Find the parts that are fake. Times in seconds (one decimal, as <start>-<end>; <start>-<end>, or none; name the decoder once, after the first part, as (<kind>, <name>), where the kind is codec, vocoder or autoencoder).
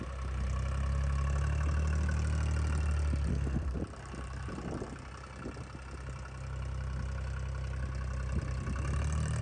3.3-3.8 (codec, SNAC)